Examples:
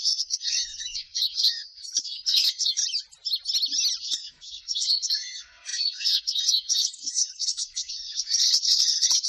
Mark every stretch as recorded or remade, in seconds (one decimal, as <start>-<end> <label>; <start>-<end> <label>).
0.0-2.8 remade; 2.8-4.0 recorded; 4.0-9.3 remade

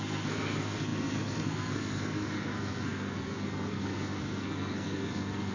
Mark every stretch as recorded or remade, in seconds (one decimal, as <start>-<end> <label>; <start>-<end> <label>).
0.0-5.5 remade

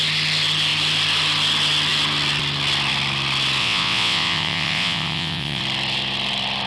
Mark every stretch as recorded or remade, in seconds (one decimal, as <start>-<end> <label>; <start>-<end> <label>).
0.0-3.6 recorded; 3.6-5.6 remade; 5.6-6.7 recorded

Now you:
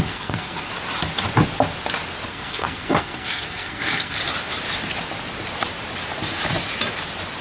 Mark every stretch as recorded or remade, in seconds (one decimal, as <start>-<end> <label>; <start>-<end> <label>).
0.0-0.7 remade; 0.7-2.3 recorded; 2.3-4.2 remade; 4.2-7.4 recorded